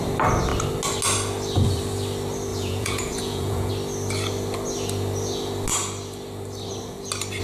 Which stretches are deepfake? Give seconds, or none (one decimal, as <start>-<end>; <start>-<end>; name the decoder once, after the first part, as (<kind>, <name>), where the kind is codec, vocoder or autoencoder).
2.5-3.7 (vocoder, Vocos)